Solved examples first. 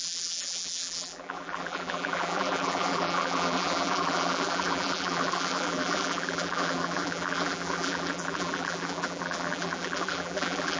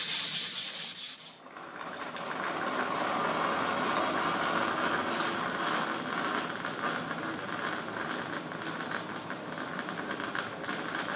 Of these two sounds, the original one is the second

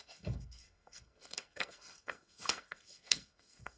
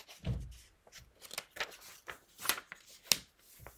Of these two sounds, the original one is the second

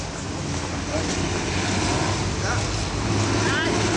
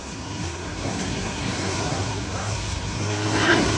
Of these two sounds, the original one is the first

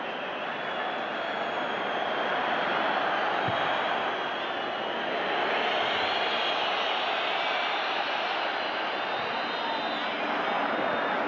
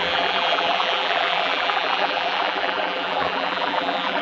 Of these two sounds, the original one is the first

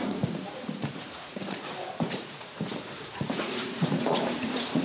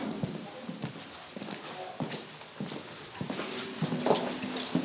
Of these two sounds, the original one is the second